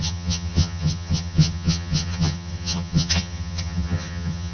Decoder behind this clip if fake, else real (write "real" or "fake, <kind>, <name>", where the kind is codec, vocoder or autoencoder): fake, vocoder, HiFi-GAN